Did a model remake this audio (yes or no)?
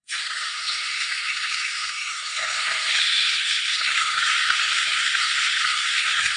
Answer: yes